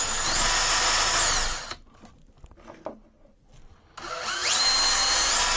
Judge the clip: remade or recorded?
recorded